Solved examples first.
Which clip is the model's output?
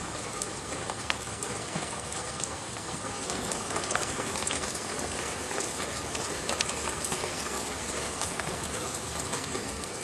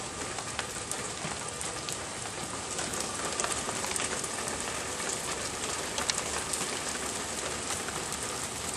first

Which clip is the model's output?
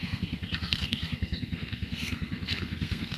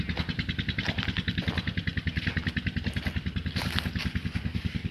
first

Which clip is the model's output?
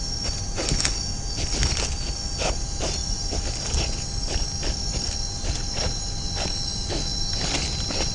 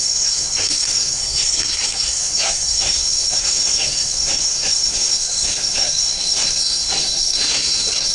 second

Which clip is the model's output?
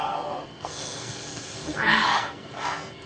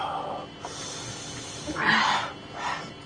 first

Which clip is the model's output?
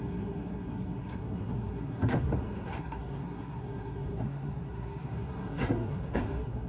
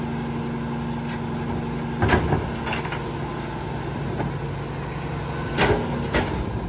first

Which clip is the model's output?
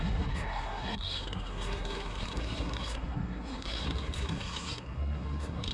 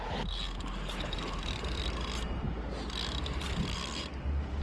first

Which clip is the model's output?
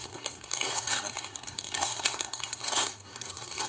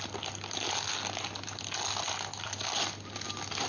first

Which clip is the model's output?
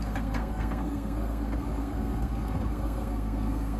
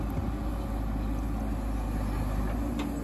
first